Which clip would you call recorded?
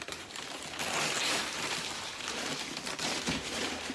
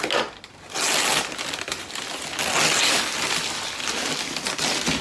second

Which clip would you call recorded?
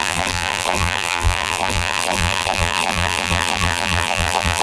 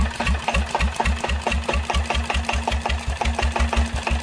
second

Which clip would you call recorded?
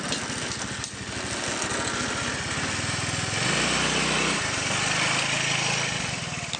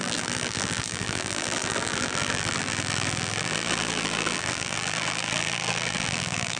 first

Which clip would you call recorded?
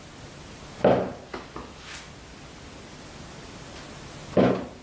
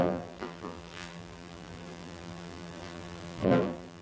first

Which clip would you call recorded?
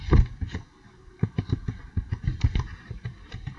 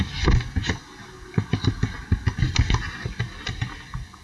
second